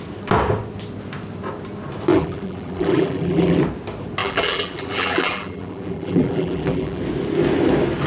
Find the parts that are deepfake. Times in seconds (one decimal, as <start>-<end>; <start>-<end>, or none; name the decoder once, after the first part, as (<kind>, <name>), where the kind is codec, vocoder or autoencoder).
2.1-3.6 (vocoder, BigVGAN v2); 4.2-7.0